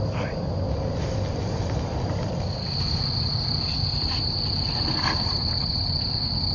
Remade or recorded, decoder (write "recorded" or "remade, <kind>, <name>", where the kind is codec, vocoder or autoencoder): recorded